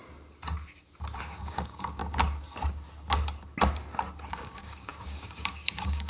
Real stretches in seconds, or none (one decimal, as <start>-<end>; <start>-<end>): 0.0-1.2; 2.0-4.3